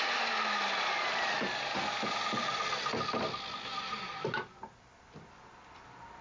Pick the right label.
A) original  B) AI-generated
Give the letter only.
A